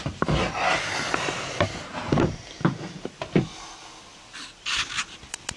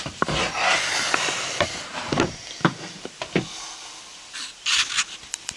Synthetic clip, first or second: second